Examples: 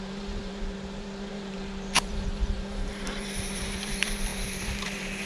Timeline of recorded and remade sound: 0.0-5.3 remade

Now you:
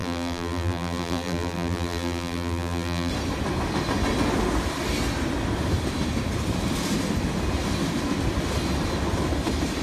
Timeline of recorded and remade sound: 0.0-3.1 remade; 3.1-9.8 recorded

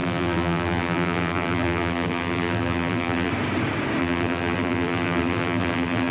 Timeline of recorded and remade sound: 0.0-3.3 remade; 3.3-4.0 recorded; 4.0-6.1 remade

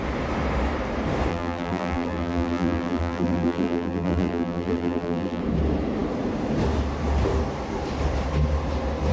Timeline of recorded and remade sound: 0.0-1.3 recorded; 1.3-5.4 remade; 5.4-9.1 recorded

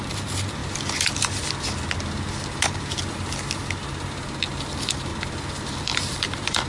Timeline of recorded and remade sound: 0.0-0.6 remade; 0.6-4.6 recorded; 4.6-5.1 remade; 5.1-5.8 recorded; 5.8-6.7 remade